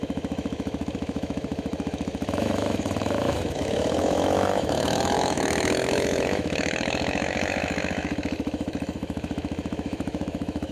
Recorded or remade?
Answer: remade